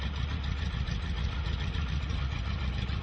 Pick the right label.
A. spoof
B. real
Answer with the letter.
A